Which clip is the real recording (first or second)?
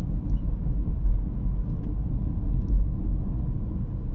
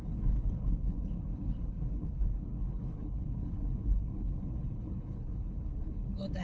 first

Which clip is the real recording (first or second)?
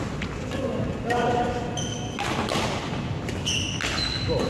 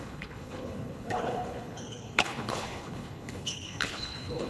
first